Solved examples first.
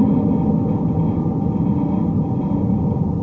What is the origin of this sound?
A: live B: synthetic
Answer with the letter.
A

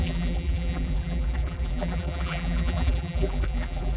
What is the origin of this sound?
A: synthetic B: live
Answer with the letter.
A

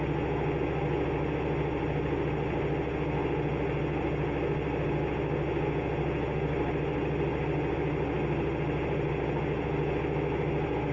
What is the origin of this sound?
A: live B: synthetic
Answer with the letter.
A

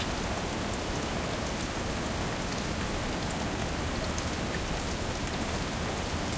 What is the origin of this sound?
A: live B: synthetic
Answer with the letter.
A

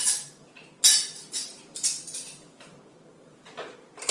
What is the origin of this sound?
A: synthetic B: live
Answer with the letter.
B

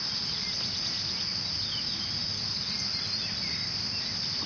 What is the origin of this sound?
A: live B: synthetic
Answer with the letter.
A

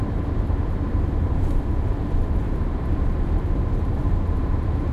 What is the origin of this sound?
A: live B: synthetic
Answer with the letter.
B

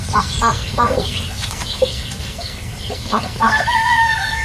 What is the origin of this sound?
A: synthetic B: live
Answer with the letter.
A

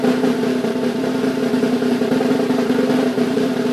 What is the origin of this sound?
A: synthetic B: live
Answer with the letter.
A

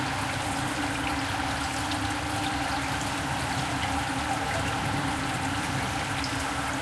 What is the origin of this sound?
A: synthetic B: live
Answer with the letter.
B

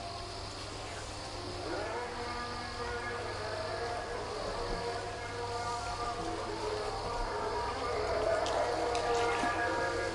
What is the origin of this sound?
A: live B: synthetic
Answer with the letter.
A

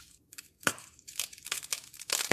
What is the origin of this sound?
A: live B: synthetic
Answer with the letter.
B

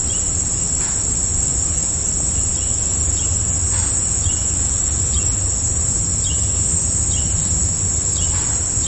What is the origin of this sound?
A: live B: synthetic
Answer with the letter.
A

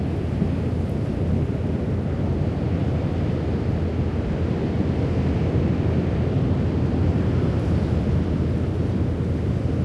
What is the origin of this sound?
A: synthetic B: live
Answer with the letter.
B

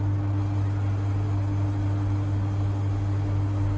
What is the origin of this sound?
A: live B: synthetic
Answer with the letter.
A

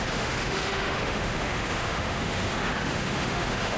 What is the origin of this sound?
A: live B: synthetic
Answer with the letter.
B